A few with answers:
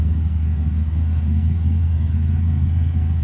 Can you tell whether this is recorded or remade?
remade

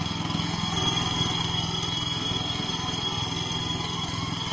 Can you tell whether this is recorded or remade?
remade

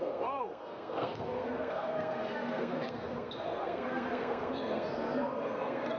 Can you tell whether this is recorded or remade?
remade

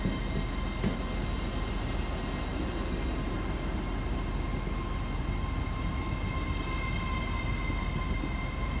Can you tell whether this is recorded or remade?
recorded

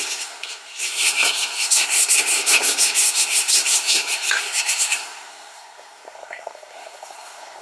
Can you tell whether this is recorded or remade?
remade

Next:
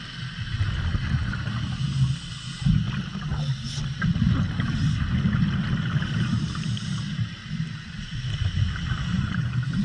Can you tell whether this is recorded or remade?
recorded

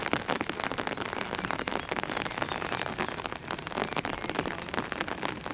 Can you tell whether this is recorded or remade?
recorded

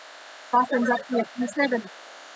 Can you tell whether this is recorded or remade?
recorded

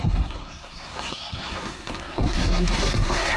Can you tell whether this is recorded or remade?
remade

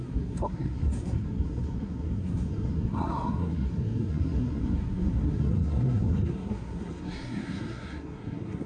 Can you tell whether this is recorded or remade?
remade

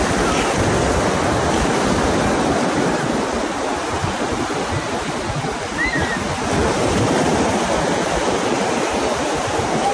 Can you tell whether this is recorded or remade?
recorded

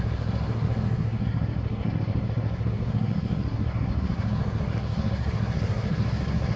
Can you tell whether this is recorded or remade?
remade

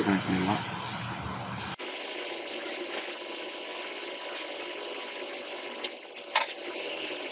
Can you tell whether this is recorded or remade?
recorded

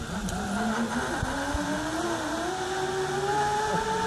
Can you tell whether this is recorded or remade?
recorded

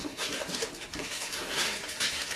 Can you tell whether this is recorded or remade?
remade